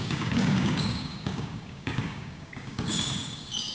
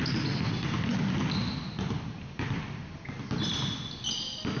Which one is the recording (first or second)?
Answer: second